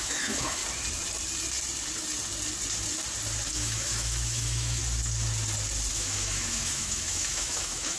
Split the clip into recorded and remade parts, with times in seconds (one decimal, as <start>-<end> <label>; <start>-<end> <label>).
0.0-0.6 remade; 0.6-3.5 recorded; 3.5-4.8 remade; 4.8-5.9 recorded; 5.9-8.0 remade